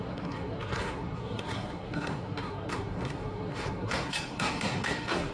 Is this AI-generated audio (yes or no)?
yes